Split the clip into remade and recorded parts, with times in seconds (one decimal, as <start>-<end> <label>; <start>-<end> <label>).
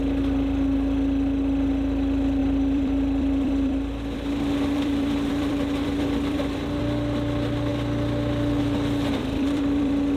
0.0-2.4 recorded; 2.4-6.8 remade; 6.8-9.2 recorded; 9.2-10.2 remade